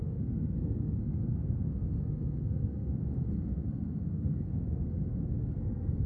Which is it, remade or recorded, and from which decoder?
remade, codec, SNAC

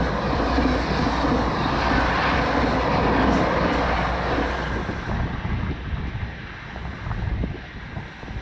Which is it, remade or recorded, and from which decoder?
recorded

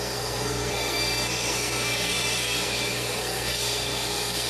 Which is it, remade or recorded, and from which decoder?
remade, codec, SNAC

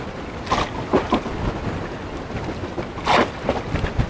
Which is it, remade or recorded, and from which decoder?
recorded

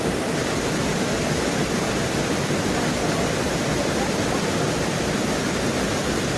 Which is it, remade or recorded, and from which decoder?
recorded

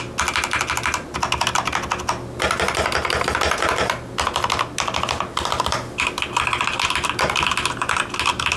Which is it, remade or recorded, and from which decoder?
recorded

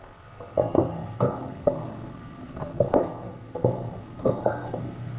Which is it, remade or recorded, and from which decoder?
remade, codec, SNAC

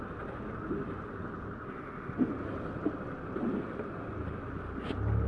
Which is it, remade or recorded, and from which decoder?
recorded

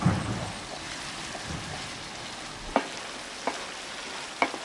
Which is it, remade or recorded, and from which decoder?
recorded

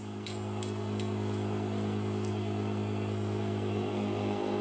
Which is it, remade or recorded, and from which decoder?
remade, codec, SNAC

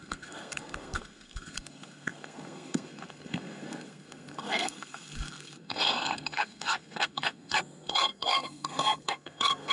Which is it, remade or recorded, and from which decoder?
remade, codec, SNAC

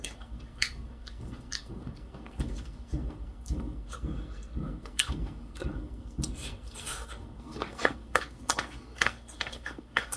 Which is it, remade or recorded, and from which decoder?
remade, codec, SNAC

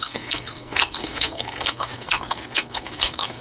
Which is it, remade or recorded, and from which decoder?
remade, codec, SNAC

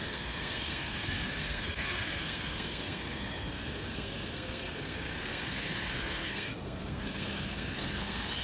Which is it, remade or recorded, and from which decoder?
remade, codec, SNAC